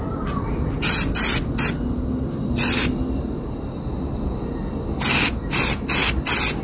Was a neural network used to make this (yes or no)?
no